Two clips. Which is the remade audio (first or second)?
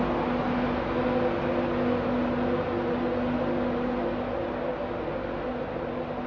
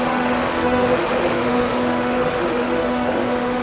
second